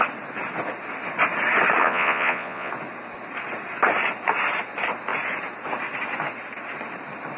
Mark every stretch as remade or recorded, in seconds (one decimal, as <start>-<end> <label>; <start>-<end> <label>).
0.0-1.8 recorded; 1.8-2.7 remade; 2.7-7.4 recorded